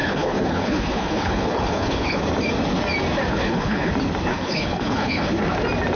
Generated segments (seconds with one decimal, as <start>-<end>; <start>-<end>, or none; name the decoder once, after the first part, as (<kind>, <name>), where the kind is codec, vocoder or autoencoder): 0.0-2.2 (codec, HILCodec); 3.3-3.9; 4.3-5.3

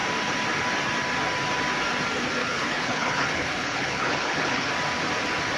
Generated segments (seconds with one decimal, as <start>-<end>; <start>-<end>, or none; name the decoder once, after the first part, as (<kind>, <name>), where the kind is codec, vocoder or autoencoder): 2.4-4.7 (codec, HILCodec)

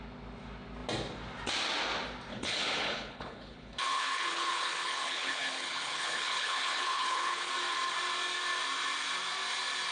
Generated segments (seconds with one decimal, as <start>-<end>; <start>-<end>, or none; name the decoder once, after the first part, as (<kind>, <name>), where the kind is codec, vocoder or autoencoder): 2.3-7.5 (codec, HILCodec)

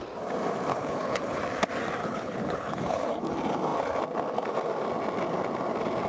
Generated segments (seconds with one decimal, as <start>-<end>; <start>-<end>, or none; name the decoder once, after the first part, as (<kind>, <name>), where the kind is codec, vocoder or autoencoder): 0.7-1.4 (codec, HILCodec); 2.0-3.2

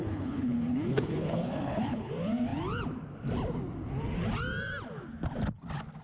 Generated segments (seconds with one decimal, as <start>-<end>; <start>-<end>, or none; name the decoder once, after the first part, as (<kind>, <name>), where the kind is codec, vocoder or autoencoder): 0.0-2.1 (codec, HILCodec)

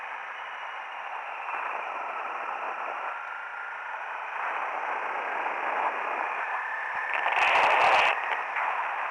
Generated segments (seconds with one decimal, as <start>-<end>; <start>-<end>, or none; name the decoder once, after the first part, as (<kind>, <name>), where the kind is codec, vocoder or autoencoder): none

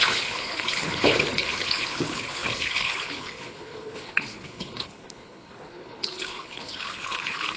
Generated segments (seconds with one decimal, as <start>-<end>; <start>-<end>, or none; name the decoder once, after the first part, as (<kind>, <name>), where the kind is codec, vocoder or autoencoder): 0.0-7.6 (codec, HILCodec)

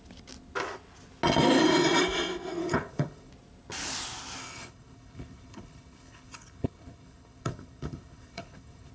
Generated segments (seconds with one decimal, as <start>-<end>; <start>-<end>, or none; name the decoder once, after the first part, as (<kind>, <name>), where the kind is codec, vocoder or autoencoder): 2.6-3.3 (codec, HILCodec); 4.4-8.9